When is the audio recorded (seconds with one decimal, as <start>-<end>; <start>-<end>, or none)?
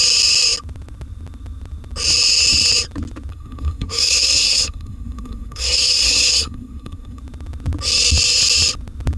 0.0-3.3; 7.2-9.2